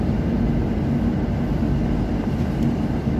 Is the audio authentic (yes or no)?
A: yes